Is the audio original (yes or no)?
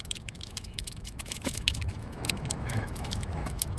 no